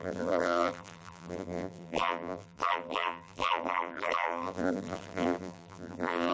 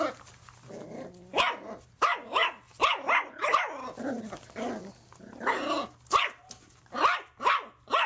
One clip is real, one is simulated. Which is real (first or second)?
second